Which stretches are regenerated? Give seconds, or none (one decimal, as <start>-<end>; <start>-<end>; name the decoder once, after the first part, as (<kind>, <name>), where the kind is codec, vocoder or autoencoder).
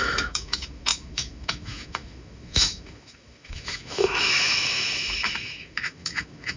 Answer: 0.0-6.6 (autoencoder, DAC-VAE)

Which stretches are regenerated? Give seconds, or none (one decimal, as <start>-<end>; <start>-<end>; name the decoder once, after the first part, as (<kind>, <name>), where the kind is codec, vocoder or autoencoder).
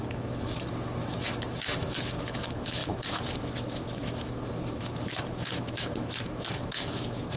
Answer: 0.0-7.4 (autoencoder, DAC-VAE)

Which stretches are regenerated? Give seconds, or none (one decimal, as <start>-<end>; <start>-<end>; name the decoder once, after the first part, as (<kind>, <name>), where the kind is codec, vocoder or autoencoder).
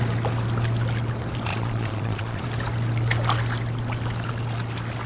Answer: 1.5-2.4 (vocoder, Vocos)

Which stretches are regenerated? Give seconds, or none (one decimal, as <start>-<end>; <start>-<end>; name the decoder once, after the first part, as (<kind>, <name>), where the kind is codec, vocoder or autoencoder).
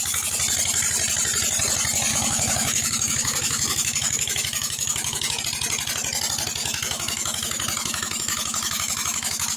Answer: 2.1-5.4 (autoencoder, DAC-VAE); 6.6-9.6